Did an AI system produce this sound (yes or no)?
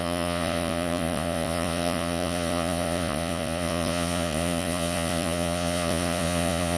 yes